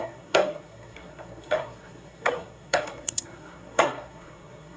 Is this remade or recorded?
remade